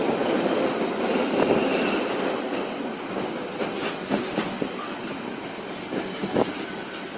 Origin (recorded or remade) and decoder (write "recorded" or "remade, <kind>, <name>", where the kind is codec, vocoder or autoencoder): recorded